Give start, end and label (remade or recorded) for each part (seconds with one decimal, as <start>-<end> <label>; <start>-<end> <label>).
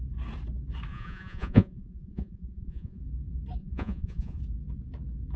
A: 0.0-0.9 recorded; 0.9-3.0 remade; 3.0-3.6 recorded; 3.6-4.4 remade; 4.4-5.4 recorded